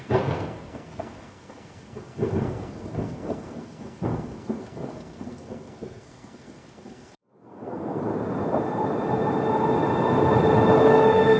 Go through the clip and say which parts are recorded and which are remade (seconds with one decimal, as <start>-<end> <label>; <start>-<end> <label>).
0.0-8.1 remade; 8.1-10.9 recorded; 10.9-11.4 remade